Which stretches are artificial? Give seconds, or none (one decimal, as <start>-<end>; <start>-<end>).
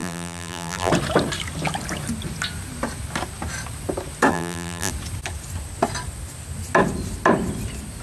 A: 0.0-0.9; 4.3-4.9